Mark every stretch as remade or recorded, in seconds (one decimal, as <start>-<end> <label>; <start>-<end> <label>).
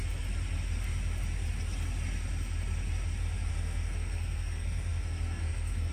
0.0-3.5 recorded; 3.5-5.9 remade